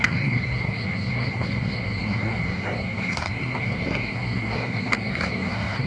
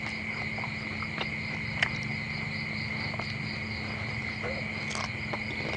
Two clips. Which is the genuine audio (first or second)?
second